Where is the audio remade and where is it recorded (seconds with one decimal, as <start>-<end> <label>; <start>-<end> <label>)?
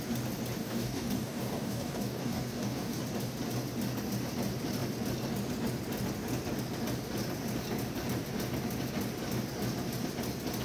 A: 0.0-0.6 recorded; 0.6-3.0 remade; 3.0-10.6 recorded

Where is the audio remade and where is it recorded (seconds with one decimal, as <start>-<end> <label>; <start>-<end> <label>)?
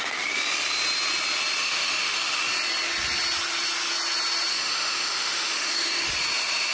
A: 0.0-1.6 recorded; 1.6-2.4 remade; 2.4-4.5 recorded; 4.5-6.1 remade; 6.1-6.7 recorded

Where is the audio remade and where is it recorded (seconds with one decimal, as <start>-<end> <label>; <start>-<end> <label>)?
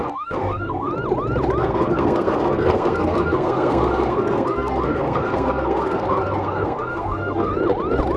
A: 0.0-0.9 remade; 0.9-1.6 recorded; 1.6-7.5 remade; 7.5-8.2 recorded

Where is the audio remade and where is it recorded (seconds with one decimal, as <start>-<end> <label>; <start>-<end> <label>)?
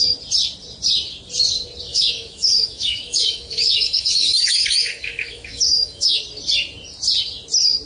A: 0.0-1.9 recorded; 1.9-6.2 remade; 6.2-7.9 recorded